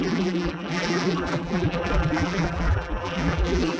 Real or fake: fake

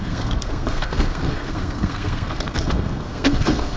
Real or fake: fake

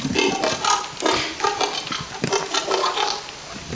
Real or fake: real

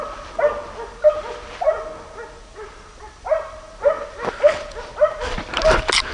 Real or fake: real